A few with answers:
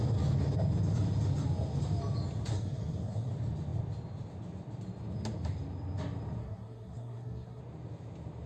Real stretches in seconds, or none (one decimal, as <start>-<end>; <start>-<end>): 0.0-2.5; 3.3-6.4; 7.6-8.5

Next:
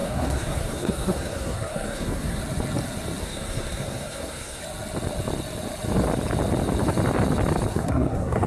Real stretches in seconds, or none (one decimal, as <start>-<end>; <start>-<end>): 2.4-3.2; 4.6-7.7

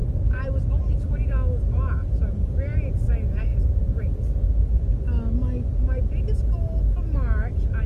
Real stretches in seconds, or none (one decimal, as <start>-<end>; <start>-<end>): 0.0-7.9

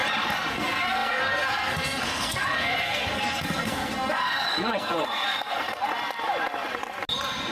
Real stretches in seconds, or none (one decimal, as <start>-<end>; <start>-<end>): 0.0-0.5; 5.9-7.5